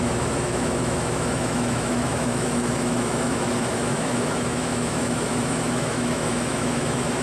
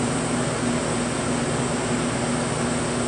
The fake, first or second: first